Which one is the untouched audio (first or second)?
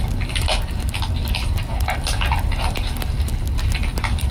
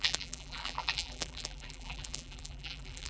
first